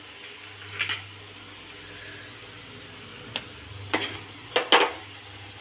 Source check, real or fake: real